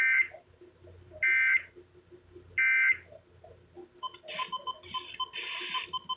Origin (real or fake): real